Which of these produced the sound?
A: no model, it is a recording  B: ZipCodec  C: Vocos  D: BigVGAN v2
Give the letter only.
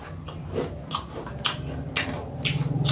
A